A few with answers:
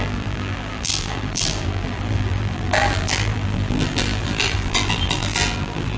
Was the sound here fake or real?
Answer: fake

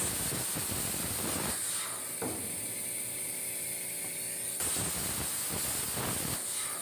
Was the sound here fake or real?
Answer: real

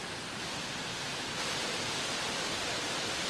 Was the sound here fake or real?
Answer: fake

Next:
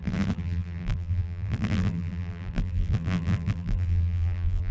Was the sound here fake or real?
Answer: fake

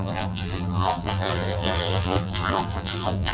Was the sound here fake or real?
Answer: fake